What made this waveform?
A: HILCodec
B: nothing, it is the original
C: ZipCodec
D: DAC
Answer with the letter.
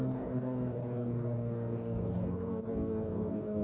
D